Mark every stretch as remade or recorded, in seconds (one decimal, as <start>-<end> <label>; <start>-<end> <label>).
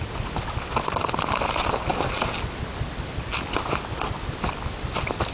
0.0-5.3 recorded